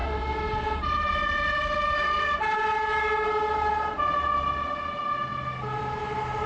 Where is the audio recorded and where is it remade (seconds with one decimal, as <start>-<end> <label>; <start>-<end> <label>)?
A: 0.0-3.7 remade; 3.7-6.5 recorded